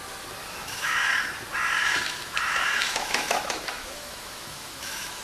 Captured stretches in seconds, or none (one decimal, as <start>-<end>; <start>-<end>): 0.0-0.4; 1.1-1.8